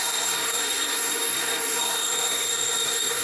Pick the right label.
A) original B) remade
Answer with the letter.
B